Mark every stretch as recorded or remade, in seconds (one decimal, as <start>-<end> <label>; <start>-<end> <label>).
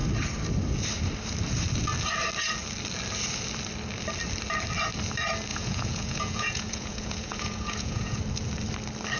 0.0-5.5 recorded; 5.5-8.2 remade; 8.2-9.2 recorded